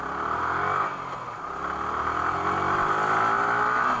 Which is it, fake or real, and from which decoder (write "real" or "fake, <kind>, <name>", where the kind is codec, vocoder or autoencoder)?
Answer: real